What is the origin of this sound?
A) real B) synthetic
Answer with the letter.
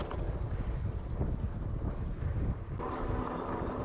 A